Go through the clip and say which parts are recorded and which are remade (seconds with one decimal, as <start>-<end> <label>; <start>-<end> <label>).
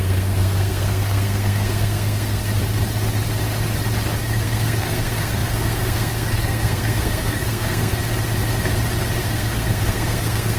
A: 0.0-2.5 remade; 2.5-4.2 recorded; 4.2-7.9 remade; 7.9-9.2 recorded; 9.2-10.6 remade